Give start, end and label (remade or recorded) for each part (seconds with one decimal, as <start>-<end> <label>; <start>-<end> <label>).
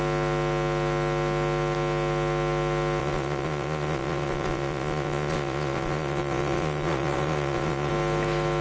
0.0-3.0 recorded; 3.0-7.9 remade; 7.9-8.6 recorded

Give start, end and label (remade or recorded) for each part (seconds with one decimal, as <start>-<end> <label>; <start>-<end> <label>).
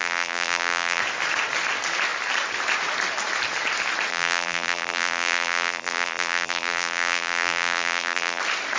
0.0-1.0 remade; 1.0-4.1 recorded; 4.1-8.4 remade; 8.4-8.8 recorded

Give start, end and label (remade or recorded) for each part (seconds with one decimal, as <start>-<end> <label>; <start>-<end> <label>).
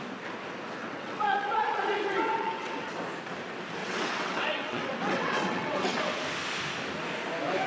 0.0-0.8 recorded; 0.8-2.9 remade; 2.9-3.8 recorded; 3.8-6.0 remade; 6.0-7.7 recorded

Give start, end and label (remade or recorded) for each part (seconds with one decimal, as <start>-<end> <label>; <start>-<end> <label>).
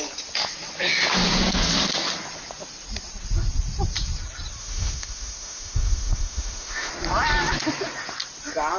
0.0-4.6 recorded; 4.6-6.9 remade; 6.9-8.8 recorded